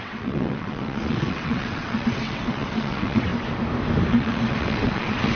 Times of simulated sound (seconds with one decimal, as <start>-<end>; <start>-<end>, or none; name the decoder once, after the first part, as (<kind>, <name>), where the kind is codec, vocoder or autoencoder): 0.0-3.3 (vocoder, WaveNeXt); 4.1-5.4